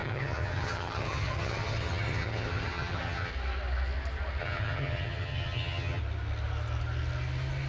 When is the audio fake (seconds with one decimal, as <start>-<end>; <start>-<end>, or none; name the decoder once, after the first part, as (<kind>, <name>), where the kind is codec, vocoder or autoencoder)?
0.0-3.3 (vocoder, HiFi-GAN); 4.4-6.0